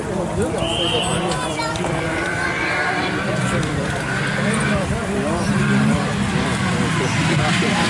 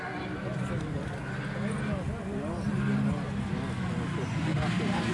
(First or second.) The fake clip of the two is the first